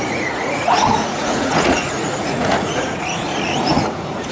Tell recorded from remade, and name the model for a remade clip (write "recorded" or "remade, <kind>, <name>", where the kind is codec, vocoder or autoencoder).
remade, vocoder, Vocos